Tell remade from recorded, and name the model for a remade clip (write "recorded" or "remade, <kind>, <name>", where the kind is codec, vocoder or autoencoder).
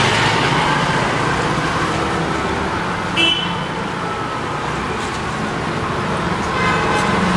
recorded